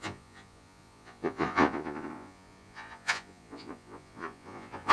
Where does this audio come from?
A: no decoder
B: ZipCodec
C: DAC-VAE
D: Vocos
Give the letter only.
D